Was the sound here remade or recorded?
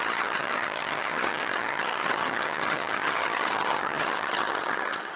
remade